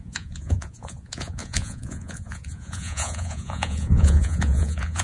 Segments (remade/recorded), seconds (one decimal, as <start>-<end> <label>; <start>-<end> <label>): 0.0-5.0 remade